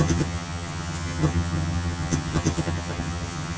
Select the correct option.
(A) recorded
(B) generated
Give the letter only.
B